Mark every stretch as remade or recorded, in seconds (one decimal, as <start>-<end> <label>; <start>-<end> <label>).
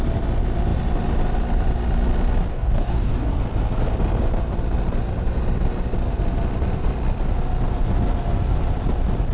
0.0-2.5 recorded; 2.5-3.3 remade; 3.3-9.3 recorded